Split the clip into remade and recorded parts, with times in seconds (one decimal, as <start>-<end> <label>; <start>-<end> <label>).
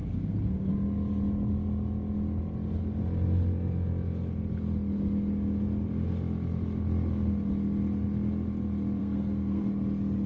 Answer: 0.0-0.7 remade; 0.7-9.0 recorded; 9.0-9.6 remade; 9.6-10.3 recorded